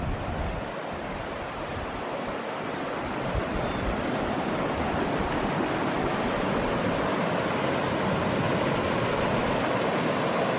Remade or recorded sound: recorded